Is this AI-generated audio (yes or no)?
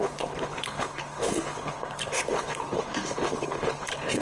yes